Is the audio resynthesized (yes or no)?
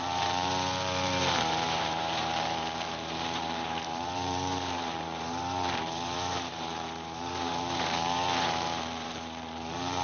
yes